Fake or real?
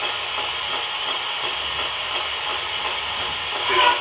real